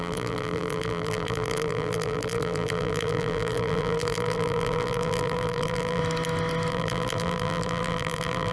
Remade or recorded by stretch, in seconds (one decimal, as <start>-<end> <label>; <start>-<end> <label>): 0.0-6.0 remade; 6.0-6.7 recorded; 6.7-8.5 remade